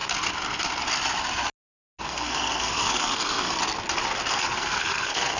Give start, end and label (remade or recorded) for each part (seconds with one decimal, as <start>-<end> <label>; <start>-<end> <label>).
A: 0.0-2.0 recorded; 2.0-3.6 remade; 3.6-4.3 recorded; 4.3-5.4 remade